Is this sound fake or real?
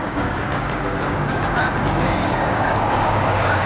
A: fake